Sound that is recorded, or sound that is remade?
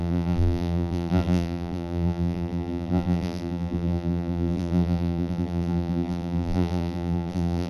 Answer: remade